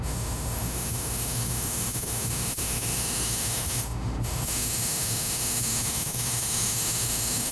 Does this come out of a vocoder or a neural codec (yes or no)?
yes